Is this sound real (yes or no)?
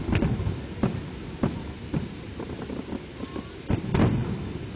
yes